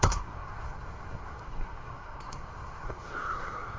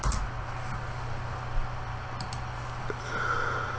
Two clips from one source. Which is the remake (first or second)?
first